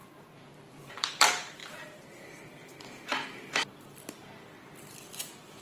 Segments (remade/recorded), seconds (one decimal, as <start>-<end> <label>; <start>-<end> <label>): 0.0-0.7 recorded; 0.7-1.6 remade; 1.6-2.1 recorded; 2.1-5.6 remade